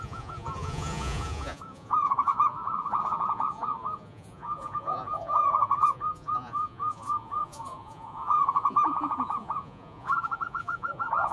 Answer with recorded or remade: remade